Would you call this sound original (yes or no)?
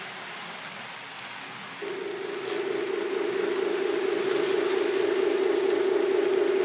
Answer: yes